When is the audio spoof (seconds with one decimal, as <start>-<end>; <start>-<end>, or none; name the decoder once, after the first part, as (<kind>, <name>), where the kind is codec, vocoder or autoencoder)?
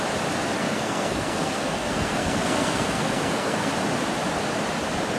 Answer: 0.6-3.7 (codec, SNAC)